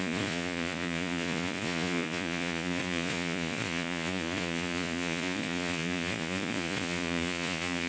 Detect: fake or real fake